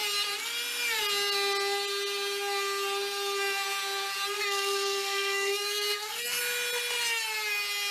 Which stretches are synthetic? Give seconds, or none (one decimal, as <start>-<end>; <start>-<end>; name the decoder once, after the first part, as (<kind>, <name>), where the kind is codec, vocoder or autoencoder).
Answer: 4.4-6.4 (codec, SNAC)

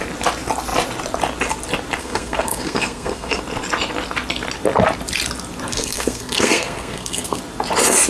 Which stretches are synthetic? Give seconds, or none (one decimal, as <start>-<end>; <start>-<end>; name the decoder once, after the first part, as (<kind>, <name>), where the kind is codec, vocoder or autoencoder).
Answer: 2.0-3.4 (codec, SNAC); 5.7-7.4